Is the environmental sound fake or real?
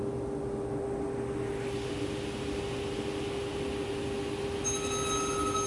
real